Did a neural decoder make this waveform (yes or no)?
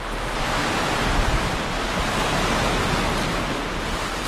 no